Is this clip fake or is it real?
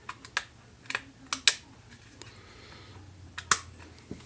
real